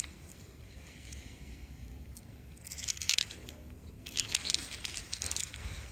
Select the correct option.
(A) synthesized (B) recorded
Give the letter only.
A